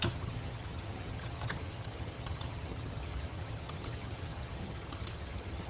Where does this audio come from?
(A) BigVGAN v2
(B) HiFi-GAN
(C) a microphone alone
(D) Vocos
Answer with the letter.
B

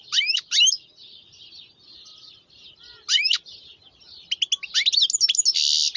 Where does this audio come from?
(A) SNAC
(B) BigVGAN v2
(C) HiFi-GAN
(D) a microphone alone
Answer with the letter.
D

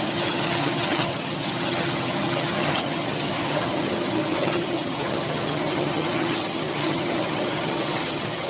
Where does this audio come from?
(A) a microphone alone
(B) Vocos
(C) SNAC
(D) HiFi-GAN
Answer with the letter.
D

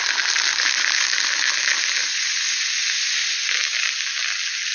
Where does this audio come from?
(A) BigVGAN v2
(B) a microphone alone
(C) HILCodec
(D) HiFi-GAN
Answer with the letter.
B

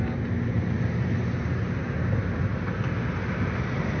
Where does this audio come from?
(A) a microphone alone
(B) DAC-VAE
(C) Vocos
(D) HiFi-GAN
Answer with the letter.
A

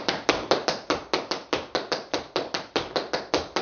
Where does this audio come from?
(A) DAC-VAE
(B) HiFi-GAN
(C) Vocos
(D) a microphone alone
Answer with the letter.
D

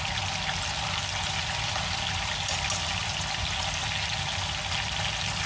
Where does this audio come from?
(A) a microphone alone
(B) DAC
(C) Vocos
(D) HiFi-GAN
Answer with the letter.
A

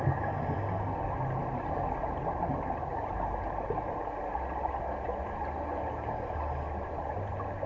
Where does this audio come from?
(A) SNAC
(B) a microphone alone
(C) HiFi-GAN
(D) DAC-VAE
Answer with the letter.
B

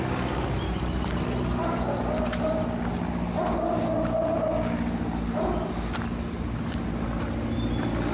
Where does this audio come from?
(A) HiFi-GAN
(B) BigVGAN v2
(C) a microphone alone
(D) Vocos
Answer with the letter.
C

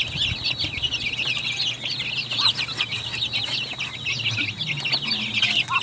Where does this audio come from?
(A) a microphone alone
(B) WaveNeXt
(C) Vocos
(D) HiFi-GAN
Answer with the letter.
A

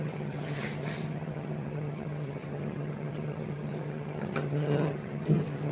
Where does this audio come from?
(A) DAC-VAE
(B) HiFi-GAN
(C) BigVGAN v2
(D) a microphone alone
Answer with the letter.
B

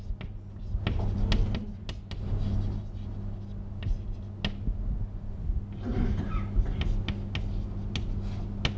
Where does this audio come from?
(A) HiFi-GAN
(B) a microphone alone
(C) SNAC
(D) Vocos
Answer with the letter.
B